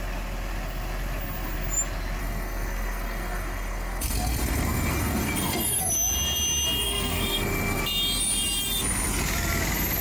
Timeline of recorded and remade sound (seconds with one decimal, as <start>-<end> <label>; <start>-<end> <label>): 0.0-2.2 recorded; 2.2-5.9 remade; 5.9-6.8 recorded; 6.8-7.8 remade; 7.8-10.0 recorded